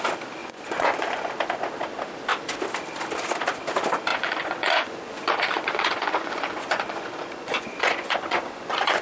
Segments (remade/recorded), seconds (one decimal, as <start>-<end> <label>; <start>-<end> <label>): 0.0-0.4 recorded; 0.4-1.3 remade; 1.3-4.1 recorded; 4.1-9.0 remade